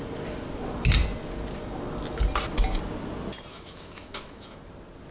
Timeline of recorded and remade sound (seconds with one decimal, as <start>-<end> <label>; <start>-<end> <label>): 0.0-3.5 recorded; 3.5-4.6 remade; 4.6-5.1 recorded